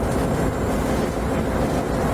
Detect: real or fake real